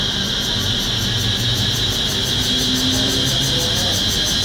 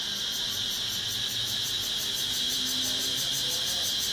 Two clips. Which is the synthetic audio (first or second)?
second